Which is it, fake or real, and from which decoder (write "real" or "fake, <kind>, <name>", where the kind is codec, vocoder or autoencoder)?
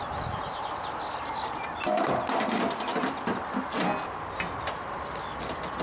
real